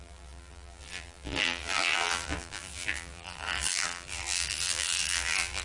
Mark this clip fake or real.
fake